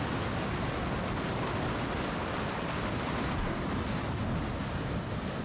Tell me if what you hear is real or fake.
real